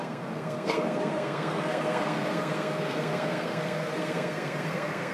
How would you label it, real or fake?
fake